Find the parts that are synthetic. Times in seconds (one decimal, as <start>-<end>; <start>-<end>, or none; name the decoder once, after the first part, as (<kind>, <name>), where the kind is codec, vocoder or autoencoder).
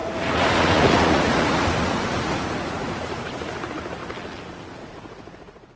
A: 0.0-4.0 (vocoder, Vocos); 4.8-5.8